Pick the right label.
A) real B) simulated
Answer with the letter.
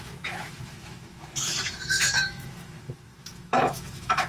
B